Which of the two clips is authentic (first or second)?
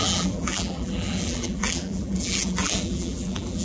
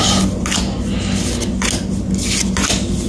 second